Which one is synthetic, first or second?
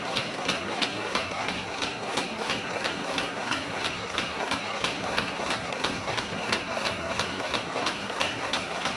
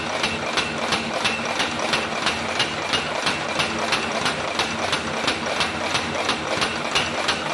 first